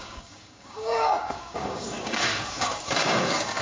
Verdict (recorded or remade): remade